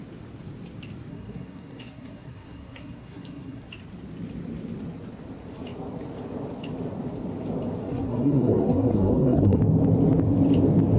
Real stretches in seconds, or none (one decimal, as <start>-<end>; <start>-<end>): 0.0-1.1; 3.7-7.8; 9.6-11.0